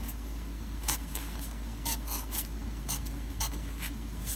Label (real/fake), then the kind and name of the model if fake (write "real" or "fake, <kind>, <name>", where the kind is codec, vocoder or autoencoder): fake, codec, SNAC